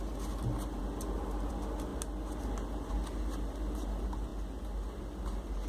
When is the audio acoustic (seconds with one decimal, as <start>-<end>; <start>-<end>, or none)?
0.0-0.8; 1.5-5.7

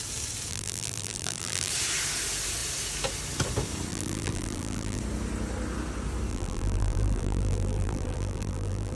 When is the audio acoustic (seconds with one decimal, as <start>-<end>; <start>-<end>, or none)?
0.0-0.5; 1.7-3.9; 5.0-6.3

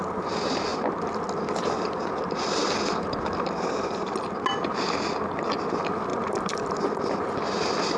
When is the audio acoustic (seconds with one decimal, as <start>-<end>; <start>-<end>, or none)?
0.0-6.1; 7.5-8.0

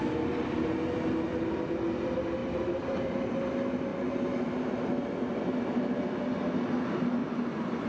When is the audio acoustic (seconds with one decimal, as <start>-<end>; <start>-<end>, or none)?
0.0-2.4; 3.1-7.2

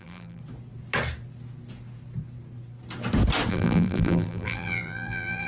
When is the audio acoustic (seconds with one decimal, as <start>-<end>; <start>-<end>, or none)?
0.4-3.5

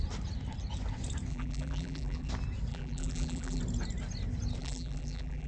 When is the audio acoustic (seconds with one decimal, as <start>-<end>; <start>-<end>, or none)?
0.0-1.3; 2.3-2.7; 3.6-4.6

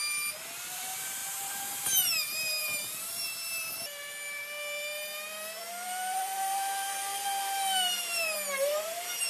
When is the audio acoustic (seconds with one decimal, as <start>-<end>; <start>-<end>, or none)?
0.0-0.7

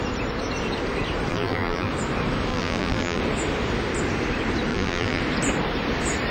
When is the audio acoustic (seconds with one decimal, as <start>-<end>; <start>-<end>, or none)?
0.0-1.3; 1.9-2.5; 3.2-4.7; 5.2-6.3